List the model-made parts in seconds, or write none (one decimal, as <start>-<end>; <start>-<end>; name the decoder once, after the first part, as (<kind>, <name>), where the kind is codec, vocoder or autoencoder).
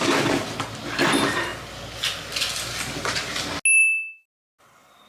none